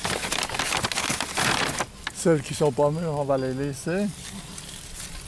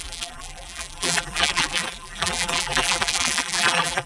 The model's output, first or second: second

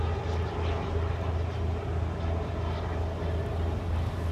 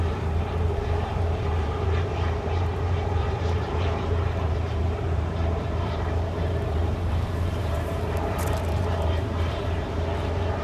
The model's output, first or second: second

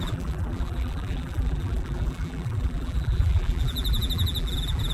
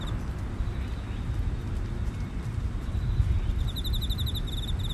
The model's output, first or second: first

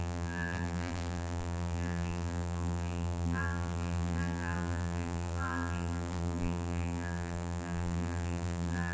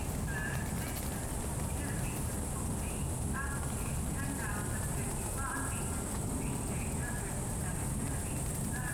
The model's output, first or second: first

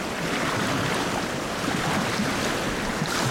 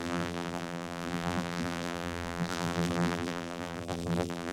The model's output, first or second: second